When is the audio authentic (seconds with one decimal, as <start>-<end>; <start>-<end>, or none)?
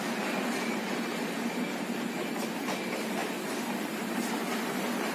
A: 0.0-5.1